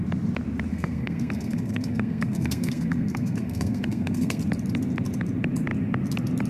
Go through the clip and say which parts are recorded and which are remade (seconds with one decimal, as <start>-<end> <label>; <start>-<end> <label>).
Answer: 0.0-0.7 recorded; 0.7-4.4 remade; 4.4-6.5 recorded